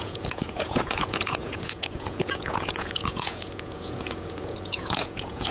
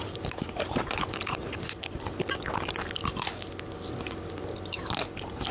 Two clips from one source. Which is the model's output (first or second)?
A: first